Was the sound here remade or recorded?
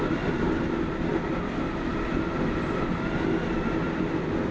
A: recorded